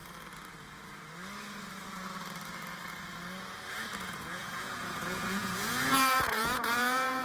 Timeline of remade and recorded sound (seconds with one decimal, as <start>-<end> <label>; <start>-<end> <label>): 0.0-4.0 recorded; 4.0-7.2 remade